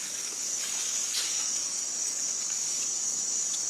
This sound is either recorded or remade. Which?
remade